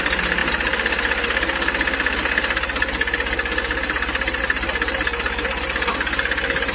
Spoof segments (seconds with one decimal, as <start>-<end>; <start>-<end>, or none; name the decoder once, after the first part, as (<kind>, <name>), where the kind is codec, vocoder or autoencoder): none